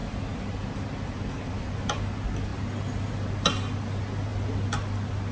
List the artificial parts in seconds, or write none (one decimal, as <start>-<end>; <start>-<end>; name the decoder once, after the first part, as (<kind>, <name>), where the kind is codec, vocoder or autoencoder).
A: none